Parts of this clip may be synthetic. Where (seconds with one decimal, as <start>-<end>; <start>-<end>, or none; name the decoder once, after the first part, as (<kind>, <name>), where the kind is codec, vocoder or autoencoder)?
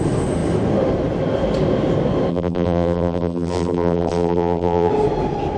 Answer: 2.3-4.9 (vocoder, BigVGAN v2)